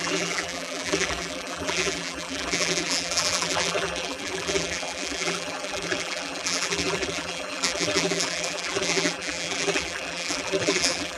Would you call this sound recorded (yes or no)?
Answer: no